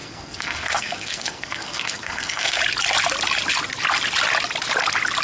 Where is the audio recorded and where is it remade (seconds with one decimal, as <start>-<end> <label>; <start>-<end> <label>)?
0.0-2.6 remade; 2.6-5.2 recorded